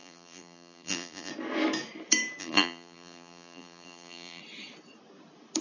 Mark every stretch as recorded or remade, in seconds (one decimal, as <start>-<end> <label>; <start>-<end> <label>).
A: 0.0-1.3 remade; 1.3-2.4 recorded; 2.4-4.4 remade; 4.4-5.6 recorded